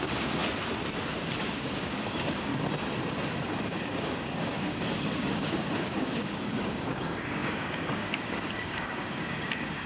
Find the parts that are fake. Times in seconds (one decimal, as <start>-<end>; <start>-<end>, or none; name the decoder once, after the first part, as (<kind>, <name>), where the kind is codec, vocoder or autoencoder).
0.0-0.4 (codec, DAC); 1.4-2.5; 3.3-9.9

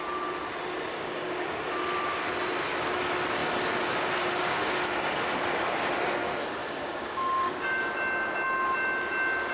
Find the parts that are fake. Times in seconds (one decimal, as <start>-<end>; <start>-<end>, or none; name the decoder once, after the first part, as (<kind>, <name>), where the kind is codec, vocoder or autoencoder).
0.9-1.6 (codec, DAC); 4.4-5.1; 6.6-7.8

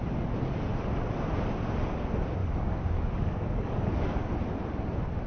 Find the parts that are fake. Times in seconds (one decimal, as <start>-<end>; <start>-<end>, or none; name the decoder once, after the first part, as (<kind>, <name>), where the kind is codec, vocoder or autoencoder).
2.4-4.3 (codec, DAC)

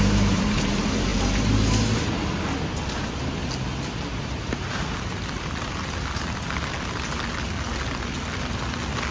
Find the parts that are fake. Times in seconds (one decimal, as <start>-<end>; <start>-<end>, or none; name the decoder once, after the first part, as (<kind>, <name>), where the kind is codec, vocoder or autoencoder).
none

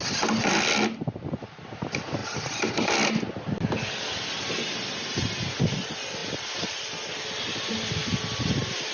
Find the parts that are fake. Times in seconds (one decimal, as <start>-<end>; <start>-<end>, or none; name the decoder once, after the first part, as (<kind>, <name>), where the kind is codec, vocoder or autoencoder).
none

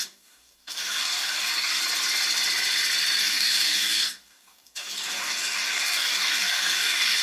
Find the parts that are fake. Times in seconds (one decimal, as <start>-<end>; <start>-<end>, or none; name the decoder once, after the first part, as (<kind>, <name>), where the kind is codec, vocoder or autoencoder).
0.0-1.8 (codec, DAC); 3.2-7.2